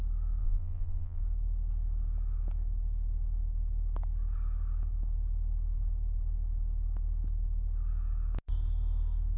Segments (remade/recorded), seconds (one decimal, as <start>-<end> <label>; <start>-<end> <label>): 0.0-0.4 recorded; 0.4-1.2 remade; 1.2-9.4 recorded